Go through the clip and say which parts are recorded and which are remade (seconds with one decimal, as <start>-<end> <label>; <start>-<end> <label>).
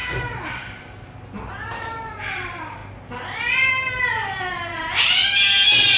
0.0-1.5 recorded; 1.5-2.8 remade; 2.8-3.7 recorded; 3.7-5.2 remade; 5.2-6.0 recorded